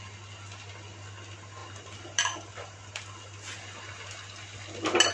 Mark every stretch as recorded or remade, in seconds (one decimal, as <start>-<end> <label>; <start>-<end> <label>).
0.0-5.1 recorded

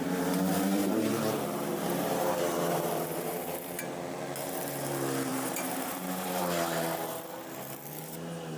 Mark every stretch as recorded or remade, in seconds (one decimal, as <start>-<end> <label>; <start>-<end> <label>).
0.0-0.8 recorded; 0.8-3.8 remade; 3.8-5.3 recorded; 5.3-6.4 remade; 6.4-8.6 recorded

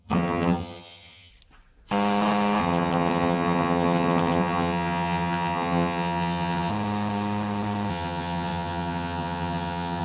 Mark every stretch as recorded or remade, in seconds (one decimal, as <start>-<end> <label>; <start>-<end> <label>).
0.0-1.3 remade; 1.3-2.6 recorded; 2.6-6.7 remade; 6.7-7.9 recorded; 7.9-10.0 remade

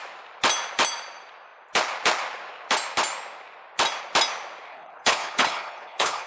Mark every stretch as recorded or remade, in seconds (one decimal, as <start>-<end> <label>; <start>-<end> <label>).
0.0-4.7 recorded; 4.7-6.3 remade

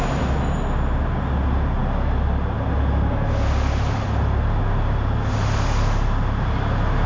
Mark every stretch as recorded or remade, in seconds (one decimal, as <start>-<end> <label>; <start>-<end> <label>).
0.0-7.1 recorded

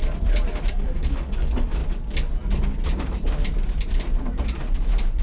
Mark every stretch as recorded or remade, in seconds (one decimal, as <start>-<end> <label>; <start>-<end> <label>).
0.0-0.7 recorded; 0.7-1.8 remade; 1.8-5.2 recorded